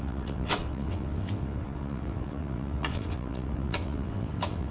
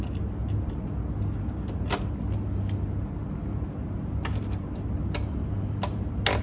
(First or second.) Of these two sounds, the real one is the second